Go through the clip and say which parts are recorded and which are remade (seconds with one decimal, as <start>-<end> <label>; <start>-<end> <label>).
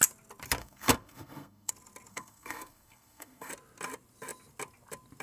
0.0-0.6 recorded; 0.6-1.7 remade; 1.7-2.1 recorded; 2.1-3.5 remade; 3.5-5.2 recorded